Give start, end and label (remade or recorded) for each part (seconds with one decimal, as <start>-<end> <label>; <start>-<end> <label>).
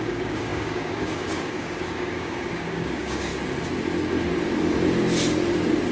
0.0-3.3 remade; 3.3-5.9 recorded